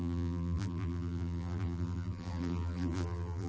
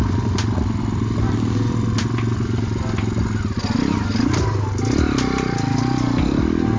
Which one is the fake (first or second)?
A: first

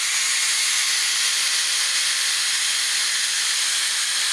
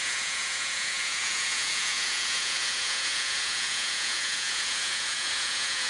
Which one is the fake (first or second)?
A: second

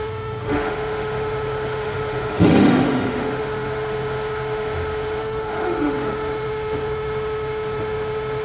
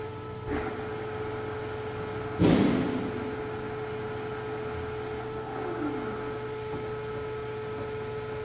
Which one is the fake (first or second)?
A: first